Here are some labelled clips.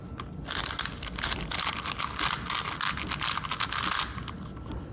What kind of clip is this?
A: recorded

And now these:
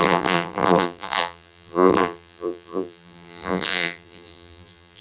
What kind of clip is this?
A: remade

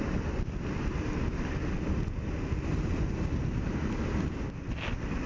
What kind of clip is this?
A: recorded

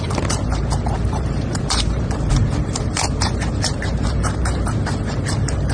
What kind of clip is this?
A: remade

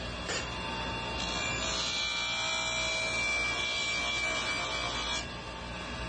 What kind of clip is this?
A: recorded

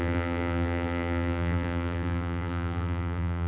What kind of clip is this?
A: remade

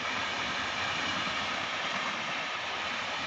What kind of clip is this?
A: remade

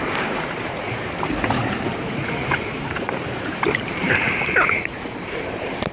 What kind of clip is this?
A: remade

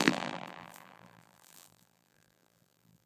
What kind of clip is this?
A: remade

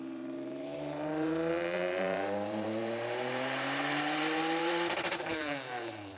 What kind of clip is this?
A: remade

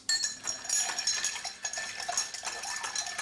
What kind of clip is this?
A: recorded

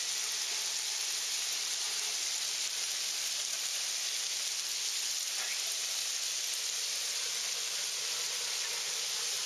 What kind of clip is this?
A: recorded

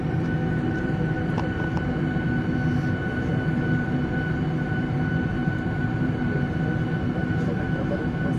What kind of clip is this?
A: remade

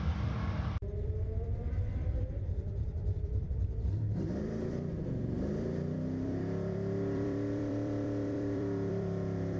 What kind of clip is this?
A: remade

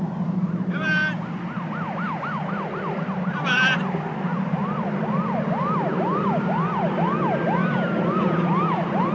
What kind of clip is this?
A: recorded